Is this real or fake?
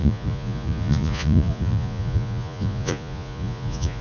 fake